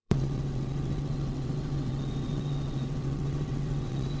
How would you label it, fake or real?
fake